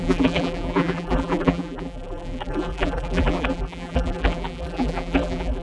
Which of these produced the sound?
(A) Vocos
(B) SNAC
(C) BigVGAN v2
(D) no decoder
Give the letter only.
C